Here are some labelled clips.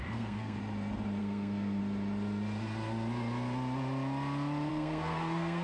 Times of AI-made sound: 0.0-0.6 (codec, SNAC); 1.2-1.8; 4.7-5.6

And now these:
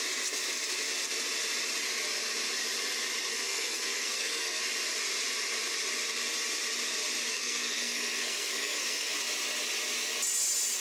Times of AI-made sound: 3.3-4.6 (codec, SNAC); 7.3-9.2